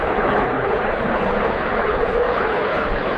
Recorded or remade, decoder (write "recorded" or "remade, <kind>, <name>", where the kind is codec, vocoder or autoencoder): remade, codec, HILCodec